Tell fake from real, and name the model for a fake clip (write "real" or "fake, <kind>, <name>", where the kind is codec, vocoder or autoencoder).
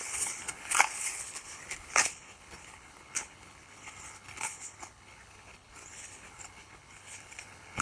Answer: fake, codec, HILCodec